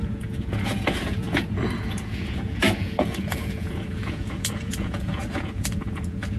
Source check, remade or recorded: remade